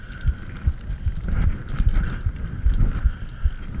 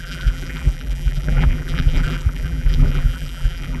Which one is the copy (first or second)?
second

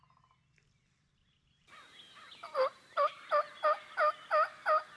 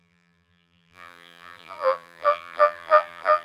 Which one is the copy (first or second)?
second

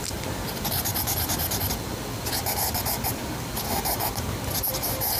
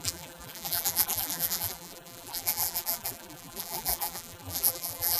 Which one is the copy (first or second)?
second